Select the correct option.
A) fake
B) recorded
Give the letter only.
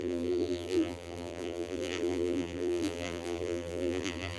A